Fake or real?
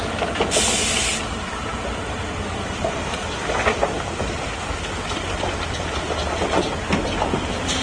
real